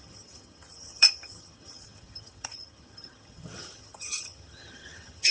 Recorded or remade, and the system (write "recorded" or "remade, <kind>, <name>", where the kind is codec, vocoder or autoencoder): remade, vocoder, HiFi-GAN